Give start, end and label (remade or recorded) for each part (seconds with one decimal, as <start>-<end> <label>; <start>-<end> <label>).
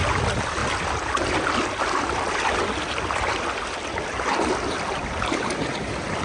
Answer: 0.0-6.2 recorded